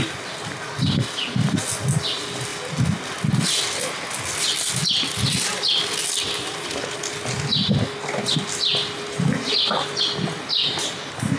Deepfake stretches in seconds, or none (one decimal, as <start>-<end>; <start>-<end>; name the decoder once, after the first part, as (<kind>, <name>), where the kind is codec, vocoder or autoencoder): none